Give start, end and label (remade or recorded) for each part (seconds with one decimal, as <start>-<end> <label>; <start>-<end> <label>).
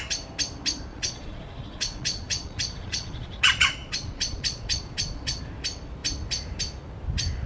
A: 0.0-0.9 recorded; 0.9-5.4 remade; 5.4-7.5 recorded